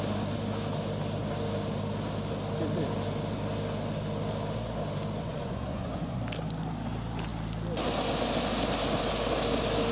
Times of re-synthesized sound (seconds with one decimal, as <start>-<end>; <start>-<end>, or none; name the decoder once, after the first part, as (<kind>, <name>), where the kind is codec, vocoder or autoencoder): 5.2-6.2 (vocoder, Vocos)